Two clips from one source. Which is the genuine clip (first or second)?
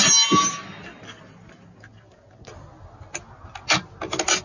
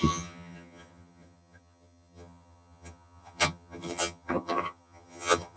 first